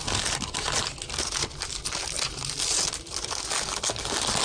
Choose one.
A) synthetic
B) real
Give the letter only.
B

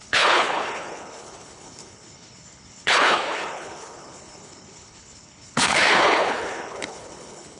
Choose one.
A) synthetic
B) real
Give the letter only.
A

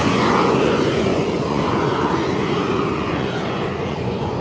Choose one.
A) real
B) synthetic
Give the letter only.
B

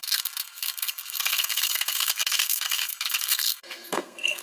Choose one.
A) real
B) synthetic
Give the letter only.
B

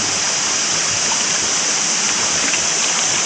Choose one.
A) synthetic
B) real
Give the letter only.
B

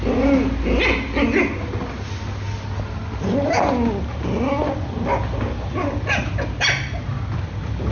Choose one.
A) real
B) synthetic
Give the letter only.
A